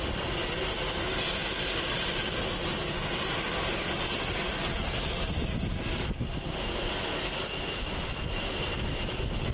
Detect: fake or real real